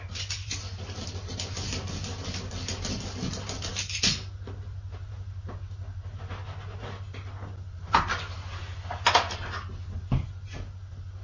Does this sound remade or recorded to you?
recorded